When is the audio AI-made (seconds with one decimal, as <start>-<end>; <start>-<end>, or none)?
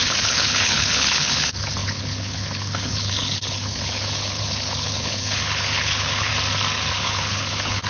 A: 0.0-6.3; 6.9-7.9